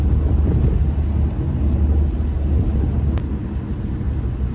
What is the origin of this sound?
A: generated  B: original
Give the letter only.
B